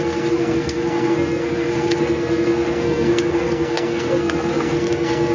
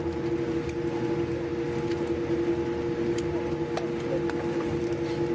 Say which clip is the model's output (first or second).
first